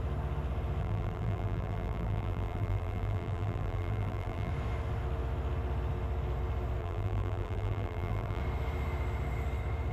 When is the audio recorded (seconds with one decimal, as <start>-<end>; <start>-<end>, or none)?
0.0-0.8; 4.5-6.8; 8.4-9.9